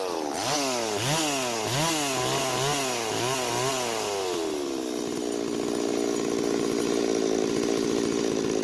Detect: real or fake real